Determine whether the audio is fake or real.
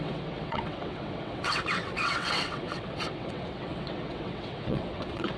fake